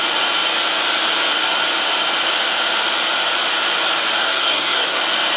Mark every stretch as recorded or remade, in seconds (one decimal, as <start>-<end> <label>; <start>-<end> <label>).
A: 0.0-4.2 recorded; 4.2-5.0 remade; 5.0-5.4 recorded